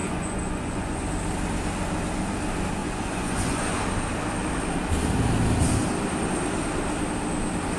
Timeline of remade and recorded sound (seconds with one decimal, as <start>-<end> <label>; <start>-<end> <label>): 0.0-1.1 remade; 1.1-2.8 recorded; 2.8-3.8 remade; 3.8-7.8 recorded